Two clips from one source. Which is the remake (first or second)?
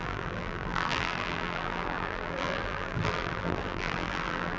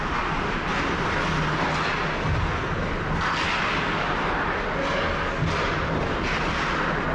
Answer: first